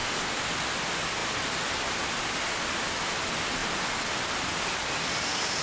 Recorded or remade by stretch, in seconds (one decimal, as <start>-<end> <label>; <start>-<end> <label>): 0.0-3.6 recorded; 3.6-5.6 remade